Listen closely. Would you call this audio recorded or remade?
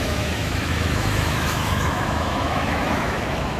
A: remade